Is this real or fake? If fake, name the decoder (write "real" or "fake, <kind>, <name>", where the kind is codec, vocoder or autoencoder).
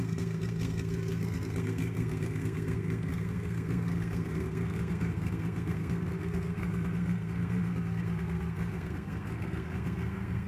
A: fake, codec, SNAC